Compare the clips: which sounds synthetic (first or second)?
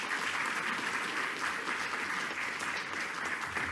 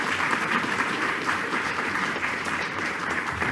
second